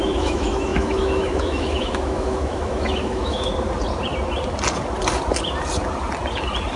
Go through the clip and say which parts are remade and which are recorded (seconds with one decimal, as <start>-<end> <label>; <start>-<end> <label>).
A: 0.0-3.5 remade; 3.5-6.8 recorded